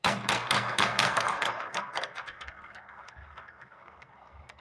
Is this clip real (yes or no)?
no